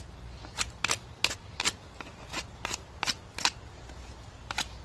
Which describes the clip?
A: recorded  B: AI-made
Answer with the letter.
A